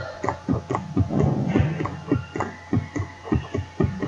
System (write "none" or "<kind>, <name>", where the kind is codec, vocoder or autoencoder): vocoder, Vocos